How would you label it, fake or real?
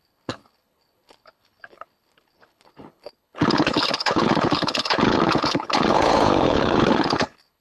fake